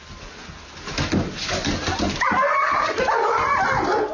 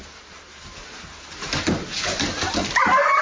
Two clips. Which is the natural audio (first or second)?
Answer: first